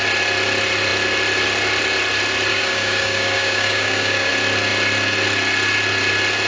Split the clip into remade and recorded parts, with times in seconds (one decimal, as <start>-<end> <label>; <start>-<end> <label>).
0.0-2.5 recorded; 2.5-4.3 remade; 4.3-6.5 recorded